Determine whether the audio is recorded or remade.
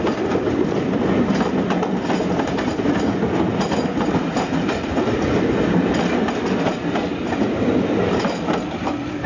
recorded